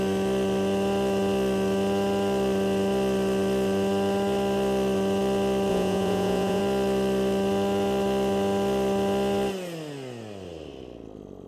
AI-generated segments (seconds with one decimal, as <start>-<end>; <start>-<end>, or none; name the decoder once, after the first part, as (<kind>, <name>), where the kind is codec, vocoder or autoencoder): 5.7-6.6 (vocoder, Vocos)